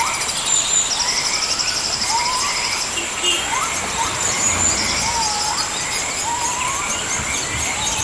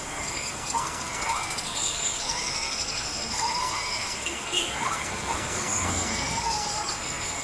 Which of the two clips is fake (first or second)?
second